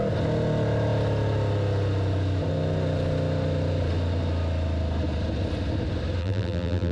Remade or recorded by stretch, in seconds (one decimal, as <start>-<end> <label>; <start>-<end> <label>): 0.0-6.2 recorded; 6.2-6.9 remade